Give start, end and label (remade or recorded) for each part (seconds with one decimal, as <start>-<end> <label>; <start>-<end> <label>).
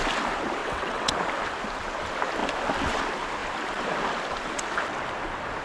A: 0.0-0.6 recorded; 0.6-1.1 remade; 1.1-5.6 recorded